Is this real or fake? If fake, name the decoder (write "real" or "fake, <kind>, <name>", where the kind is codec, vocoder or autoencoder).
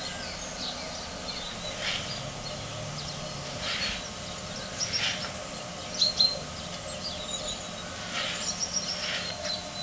real